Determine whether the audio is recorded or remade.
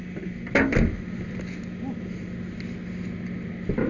recorded